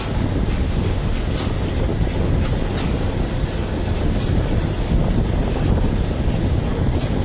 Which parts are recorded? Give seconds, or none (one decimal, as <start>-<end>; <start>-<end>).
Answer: 0.0-0.6; 1.1-7.2